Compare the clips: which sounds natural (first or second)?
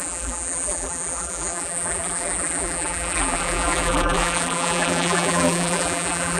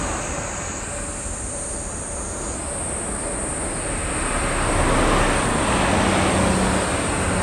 second